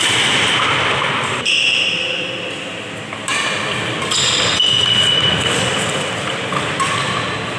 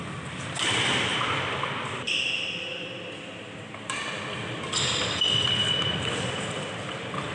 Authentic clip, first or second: first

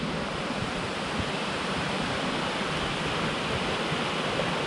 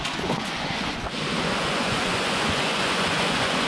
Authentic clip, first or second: first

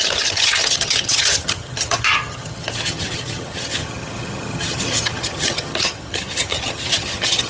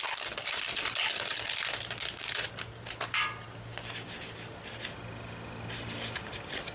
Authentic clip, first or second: second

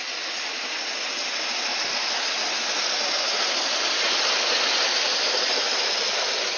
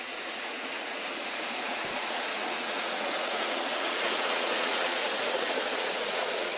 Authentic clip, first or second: first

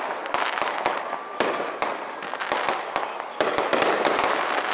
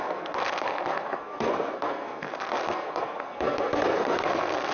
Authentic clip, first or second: first